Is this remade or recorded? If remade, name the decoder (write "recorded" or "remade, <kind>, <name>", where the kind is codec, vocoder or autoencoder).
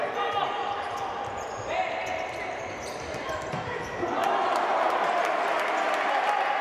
recorded